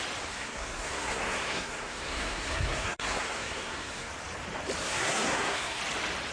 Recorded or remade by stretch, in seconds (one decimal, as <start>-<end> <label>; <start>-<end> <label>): 0.0-0.4 recorded; 0.4-4.1 remade; 4.1-4.8 recorded; 4.8-5.8 remade; 5.8-6.3 recorded